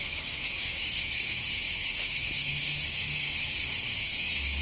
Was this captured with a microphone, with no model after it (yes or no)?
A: no